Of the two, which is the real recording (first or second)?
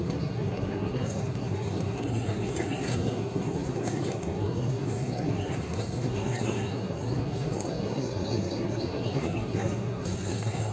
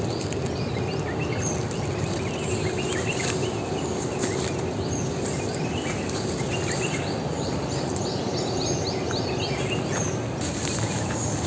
second